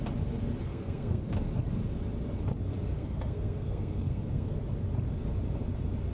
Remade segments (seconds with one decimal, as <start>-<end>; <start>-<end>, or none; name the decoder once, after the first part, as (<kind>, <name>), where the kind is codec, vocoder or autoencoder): 0.7-1.2 (codec, SNAC); 2.9-4.6

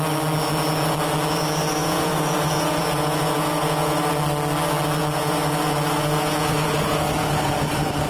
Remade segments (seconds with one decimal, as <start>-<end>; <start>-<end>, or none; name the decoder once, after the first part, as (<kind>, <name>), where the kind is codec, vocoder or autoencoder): 1.8-4.0 (vocoder, Vocos); 5.0-7.5

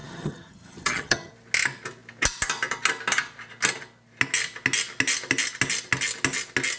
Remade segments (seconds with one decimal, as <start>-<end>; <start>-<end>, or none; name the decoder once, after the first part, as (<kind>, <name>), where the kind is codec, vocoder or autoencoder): 0.0-1.3 (vocoder, HiFi-GAN)

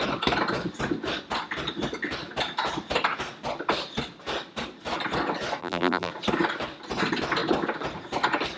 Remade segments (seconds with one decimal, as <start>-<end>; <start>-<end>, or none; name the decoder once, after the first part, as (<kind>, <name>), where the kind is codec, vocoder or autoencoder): 5.6-6.1 (vocoder, BigVGAN v2)

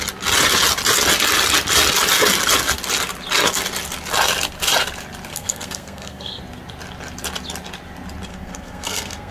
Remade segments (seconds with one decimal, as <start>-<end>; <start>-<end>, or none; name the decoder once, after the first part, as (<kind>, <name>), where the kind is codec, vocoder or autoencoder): 5.3-6.4 (codec, SNAC); 8.3-9.3